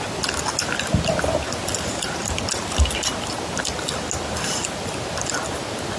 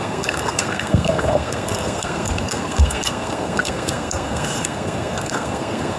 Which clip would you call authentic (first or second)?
first